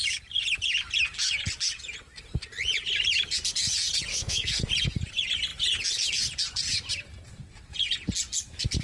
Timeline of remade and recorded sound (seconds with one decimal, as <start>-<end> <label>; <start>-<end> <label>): 0.0-4.1 recorded; 4.1-4.7 remade; 4.7-8.8 recorded